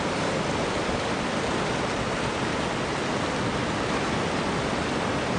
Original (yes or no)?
yes